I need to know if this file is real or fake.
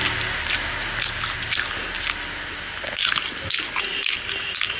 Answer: real